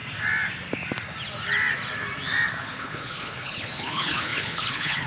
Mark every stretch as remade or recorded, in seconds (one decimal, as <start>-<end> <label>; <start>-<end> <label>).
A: 0.0-2.6 recorded; 2.6-5.1 remade